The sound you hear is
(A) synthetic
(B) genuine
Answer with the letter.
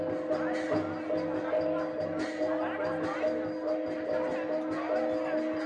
B